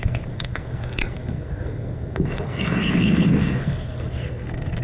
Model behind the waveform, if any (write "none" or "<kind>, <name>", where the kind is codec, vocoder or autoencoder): codec, SNAC